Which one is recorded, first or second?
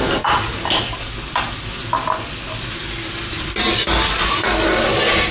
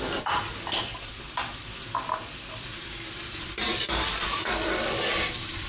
first